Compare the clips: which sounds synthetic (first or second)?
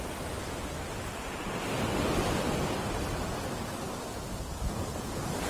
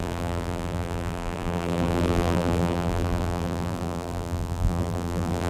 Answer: second